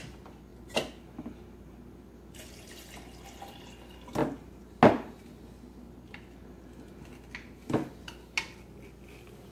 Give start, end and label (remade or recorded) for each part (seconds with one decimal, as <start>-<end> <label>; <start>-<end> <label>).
0.0-9.5 recorded